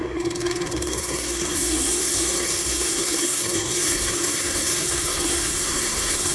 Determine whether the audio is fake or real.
fake